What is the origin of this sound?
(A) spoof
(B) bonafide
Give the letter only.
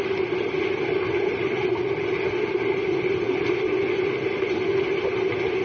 B